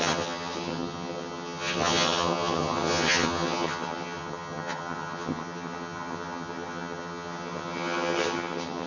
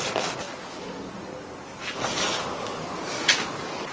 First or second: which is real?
second